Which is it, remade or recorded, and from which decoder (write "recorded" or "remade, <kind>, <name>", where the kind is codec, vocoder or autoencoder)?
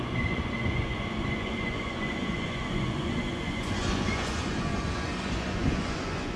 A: remade, vocoder, Vocos